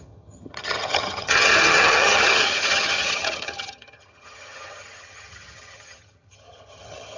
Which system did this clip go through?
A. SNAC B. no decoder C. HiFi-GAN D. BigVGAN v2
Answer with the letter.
C